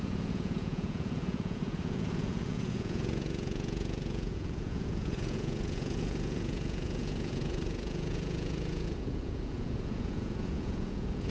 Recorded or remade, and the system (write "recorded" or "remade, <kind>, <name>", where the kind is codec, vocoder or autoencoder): remade, vocoder, Vocos